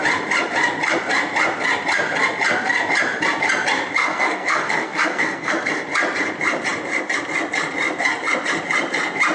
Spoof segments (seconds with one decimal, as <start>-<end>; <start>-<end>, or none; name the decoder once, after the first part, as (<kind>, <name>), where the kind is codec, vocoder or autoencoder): 4.0-5.5 (codec, SNAC)